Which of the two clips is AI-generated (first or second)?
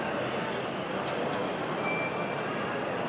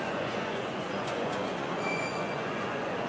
second